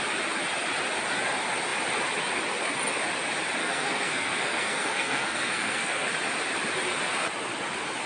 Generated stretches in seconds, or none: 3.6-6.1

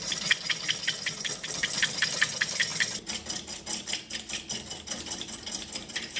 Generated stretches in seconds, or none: none

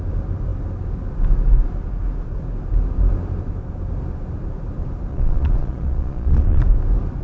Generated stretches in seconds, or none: 5.1-6.6

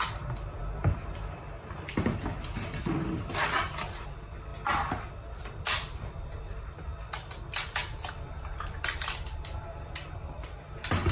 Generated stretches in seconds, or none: 0.0-4.5; 5.6-11.1

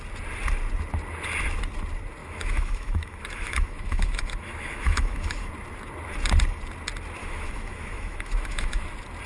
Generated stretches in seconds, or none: 2.2-5.5; 7.2-8.8

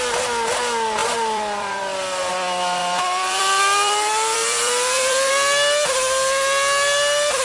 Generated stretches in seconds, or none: 1.0-1.8; 2.8-5.3

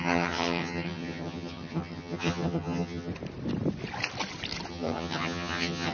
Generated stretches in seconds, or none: 0.0-3.1; 4.7-5.9

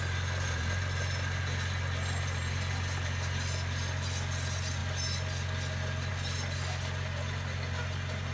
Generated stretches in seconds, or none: none